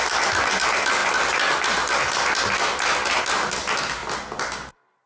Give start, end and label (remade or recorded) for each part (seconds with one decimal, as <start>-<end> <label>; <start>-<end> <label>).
0.0-5.1 recorded